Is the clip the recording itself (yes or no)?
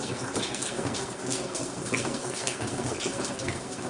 no